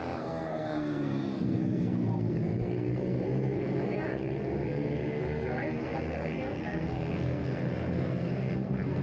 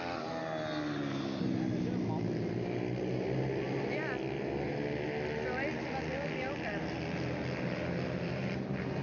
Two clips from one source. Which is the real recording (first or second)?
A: second